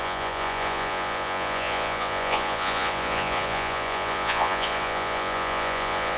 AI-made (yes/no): yes